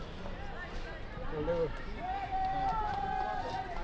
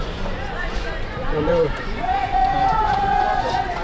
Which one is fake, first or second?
second